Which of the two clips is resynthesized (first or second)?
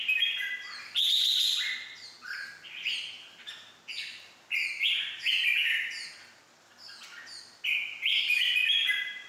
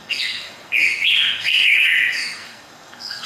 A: second